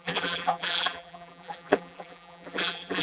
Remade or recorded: remade